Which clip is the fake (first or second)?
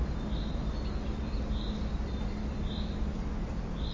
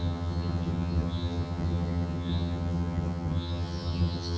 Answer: second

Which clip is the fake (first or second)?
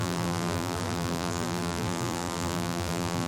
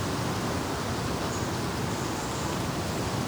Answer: first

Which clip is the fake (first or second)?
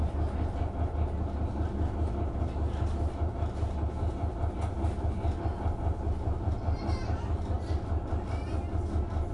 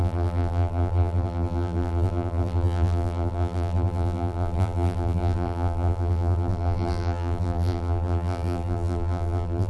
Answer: second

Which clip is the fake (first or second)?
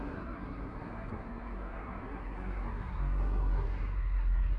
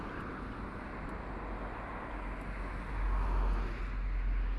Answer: first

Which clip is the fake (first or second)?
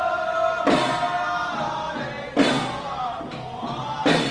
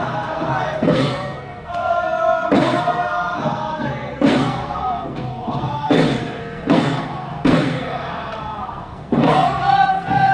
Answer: second